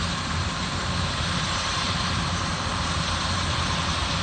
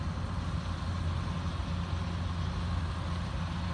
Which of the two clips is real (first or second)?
second